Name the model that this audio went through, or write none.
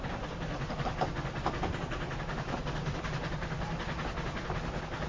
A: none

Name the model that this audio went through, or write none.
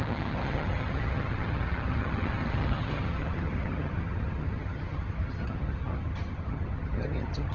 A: vocoder, HiFi-GAN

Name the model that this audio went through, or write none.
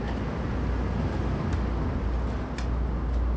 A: none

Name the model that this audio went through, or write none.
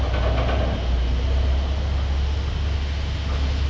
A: none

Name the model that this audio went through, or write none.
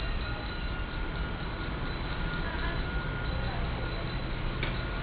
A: none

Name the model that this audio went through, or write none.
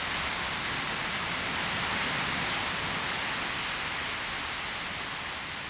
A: none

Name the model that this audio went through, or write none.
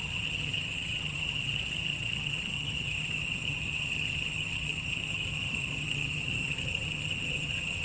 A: vocoder, HiFi-GAN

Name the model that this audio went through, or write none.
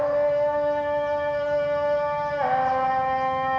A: none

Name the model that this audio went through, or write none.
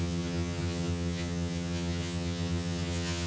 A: vocoder, HiFi-GAN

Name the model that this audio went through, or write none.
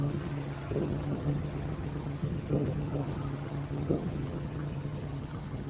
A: vocoder, HiFi-GAN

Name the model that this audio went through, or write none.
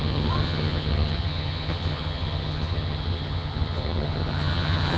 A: vocoder, HiFi-GAN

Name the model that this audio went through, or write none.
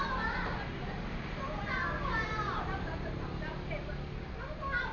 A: none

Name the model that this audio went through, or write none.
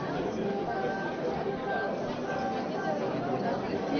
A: none